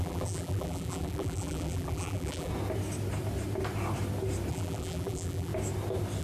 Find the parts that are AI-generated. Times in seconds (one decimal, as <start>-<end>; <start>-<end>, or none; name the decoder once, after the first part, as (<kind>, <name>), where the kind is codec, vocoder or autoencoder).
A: 0.0-2.5 (vocoder, BigVGAN v2); 4.5-5.5